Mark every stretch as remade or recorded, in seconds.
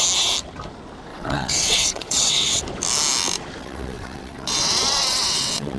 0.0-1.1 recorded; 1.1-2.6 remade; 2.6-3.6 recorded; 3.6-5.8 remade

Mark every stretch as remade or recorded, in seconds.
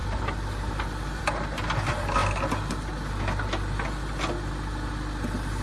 0.0-5.6 recorded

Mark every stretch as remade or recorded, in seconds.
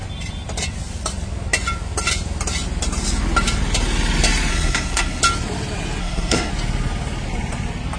0.0-4.5 recorded; 4.5-5.2 remade; 5.2-6.0 recorded; 6.0-6.5 remade; 6.5-8.0 recorded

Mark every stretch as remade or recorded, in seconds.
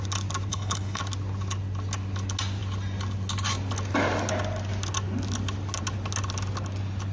0.0-0.5 recorded; 0.5-1.0 remade; 1.0-7.1 recorded